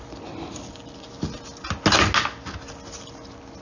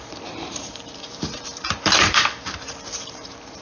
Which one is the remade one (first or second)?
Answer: second